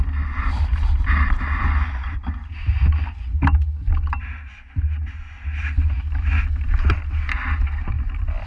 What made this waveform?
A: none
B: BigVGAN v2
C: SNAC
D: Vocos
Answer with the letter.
A